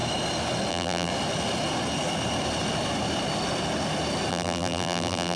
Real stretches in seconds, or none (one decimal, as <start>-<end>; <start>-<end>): 0.0-0.7; 1.1-4.3